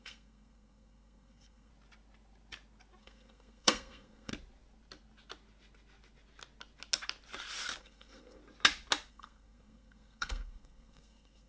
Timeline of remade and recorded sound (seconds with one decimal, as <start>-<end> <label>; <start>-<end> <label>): 0.0-1.7 remade; 1.7-3.0 recorded; 3.0-4.3 remade; 4.3-7.8 recorded; 7.8-8.4 remade; 8.4-9.1 recorded; 9.1-11.5 remade